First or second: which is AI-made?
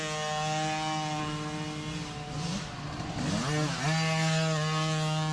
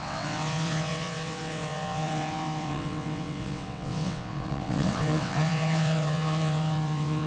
second